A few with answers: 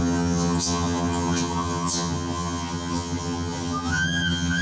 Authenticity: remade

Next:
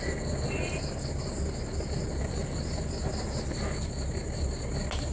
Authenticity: recorded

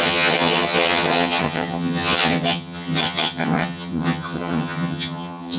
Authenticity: remade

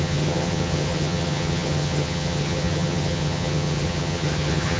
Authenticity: remade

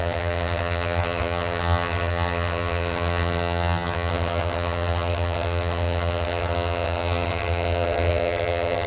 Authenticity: remade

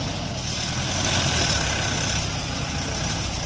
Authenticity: recorded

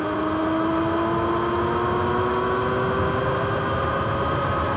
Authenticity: recorded